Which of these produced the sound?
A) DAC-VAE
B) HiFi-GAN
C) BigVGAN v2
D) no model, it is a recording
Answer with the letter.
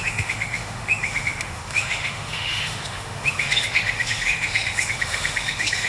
A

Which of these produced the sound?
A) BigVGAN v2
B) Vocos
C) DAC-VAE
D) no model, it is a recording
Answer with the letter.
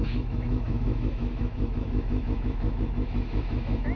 C